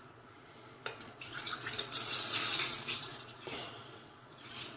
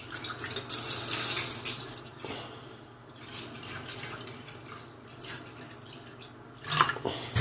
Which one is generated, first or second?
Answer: first